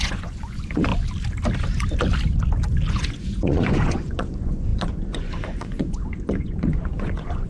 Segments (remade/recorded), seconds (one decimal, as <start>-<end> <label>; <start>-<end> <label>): 0.0-0.9 remade; 0.9-2.9 recorded; 2.9-7.5 remade